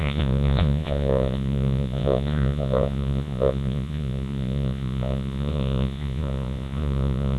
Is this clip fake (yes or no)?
yes